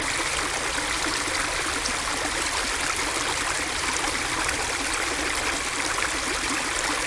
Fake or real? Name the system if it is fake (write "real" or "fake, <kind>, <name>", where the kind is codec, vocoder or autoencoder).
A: real